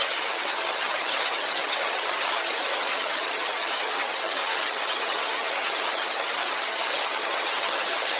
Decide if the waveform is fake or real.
fake